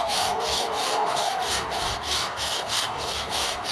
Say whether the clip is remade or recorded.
remade